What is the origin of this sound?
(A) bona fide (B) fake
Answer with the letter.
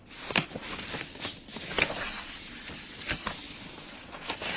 A